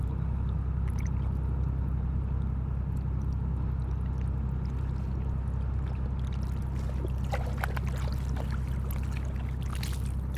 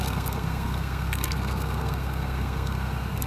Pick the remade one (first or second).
second